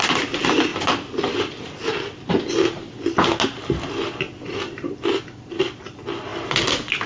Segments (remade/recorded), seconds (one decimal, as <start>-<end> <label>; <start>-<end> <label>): 0.0-7.1 recorded